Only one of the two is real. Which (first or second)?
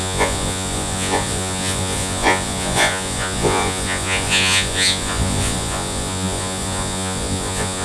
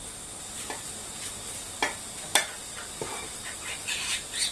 second